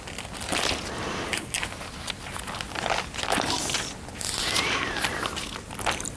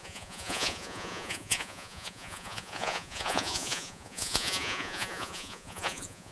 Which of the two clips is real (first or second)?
first